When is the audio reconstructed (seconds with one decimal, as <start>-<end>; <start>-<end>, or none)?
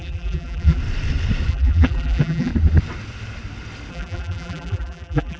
0.0-0.8; 1.5-2.5; 3.9-5.4